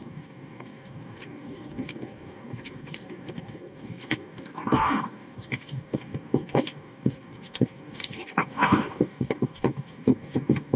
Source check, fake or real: fake